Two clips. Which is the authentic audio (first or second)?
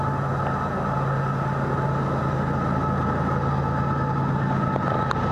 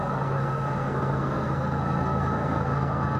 first